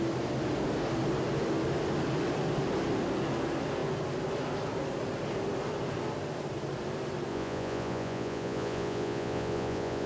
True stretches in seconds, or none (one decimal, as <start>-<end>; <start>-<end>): 0.0-7.3